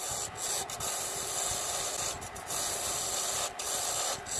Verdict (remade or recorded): recorded